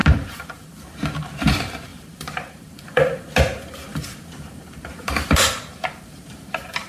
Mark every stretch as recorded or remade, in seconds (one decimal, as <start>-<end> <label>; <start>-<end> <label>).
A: 0.0-6.9 remade